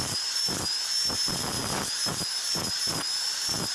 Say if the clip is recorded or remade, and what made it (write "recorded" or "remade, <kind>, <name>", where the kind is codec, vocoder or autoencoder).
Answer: remade, vocoder, BigVGAN v2